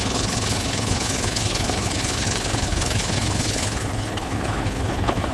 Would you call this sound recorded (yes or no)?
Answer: no